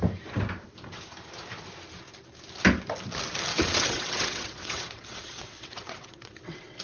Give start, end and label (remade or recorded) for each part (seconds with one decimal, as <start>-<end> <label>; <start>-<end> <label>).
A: 0.0-3.5 recorded; 3.5-6.8 remade